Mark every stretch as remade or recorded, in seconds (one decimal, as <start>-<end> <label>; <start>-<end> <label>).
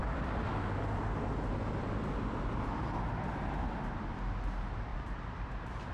0.0-0.8 remade; 0.8-4.9 recorded; 4.9-5.9 remade